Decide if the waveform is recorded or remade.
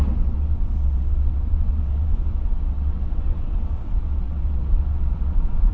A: remade